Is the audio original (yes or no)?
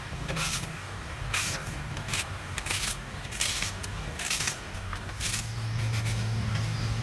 no